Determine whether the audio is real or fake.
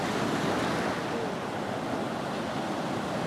real